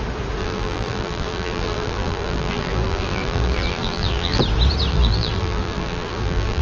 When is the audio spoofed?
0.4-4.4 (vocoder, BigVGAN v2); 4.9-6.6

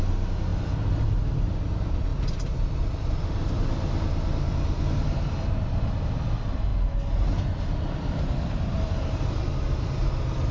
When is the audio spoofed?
0.0-10.5 (vocoder, BigVGAN v2)

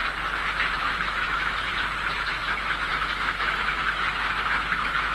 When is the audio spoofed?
0.8-1.7 (autoencoder, DAC-VAE); 2.3-5.1

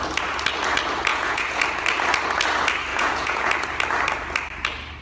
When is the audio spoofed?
1.1-1.6 (vocoder, Vocos); 2.9-3.5